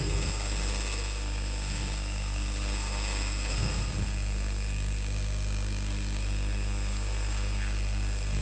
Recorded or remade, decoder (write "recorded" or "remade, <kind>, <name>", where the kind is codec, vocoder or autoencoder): remade, codec, SNAC